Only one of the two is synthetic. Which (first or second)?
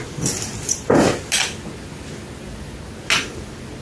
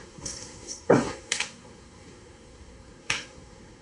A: second